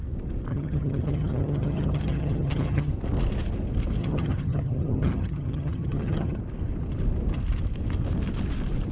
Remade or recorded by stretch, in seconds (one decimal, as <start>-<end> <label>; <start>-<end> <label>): 0.0-0.5 recorded; 0.5-2.9 remade; 2.9-4.0 recorded; 4.0-6.4 remade; 6.4-8.9 recorded